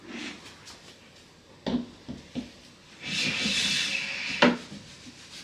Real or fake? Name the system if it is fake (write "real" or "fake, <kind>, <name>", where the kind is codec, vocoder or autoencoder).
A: real